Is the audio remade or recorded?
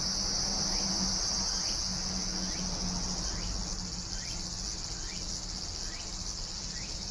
recorded